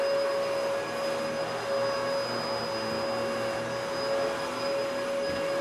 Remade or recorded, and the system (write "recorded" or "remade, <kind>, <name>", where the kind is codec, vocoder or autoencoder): recorded